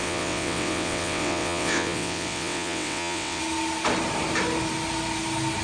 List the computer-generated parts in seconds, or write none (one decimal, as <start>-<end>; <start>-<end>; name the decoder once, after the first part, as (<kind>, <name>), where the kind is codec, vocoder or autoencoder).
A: 0.0-3.4 (vocoder, WaveNeXt)